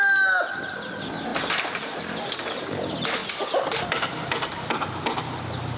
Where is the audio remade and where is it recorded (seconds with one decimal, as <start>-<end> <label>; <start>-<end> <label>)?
0.0-5.8 recorded